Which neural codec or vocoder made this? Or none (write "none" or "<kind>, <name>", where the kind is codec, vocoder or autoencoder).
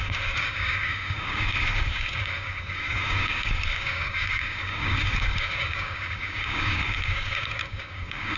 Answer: codec, DAC